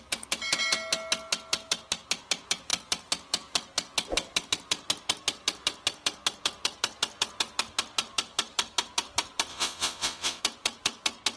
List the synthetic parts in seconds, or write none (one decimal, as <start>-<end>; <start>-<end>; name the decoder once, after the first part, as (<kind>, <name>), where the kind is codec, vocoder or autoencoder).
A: 9.5-10.4 (vocoder, Vocos)